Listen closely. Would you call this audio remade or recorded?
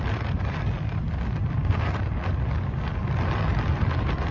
recorded